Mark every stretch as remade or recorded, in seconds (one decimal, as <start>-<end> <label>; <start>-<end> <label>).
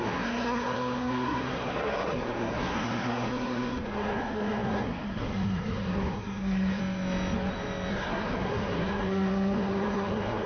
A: 0.0-6.8 remade; 6.8-7.9 recorded; 7.9-10.5 remade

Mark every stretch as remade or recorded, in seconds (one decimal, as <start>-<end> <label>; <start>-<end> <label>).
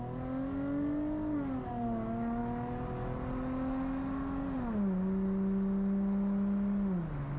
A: 0.0-7.4 recorded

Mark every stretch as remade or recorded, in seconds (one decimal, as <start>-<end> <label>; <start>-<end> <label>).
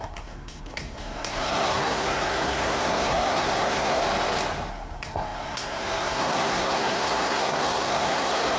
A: 0.0-4.0 remade; 4.0-4.7 recorded; 4.7-8.6 remade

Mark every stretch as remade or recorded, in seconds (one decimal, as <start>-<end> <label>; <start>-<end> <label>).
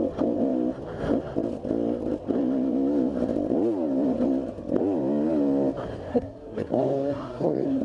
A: 0.0-6.1 recorded; 6.1-7.8 remade